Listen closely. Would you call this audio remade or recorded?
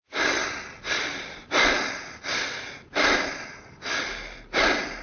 recorded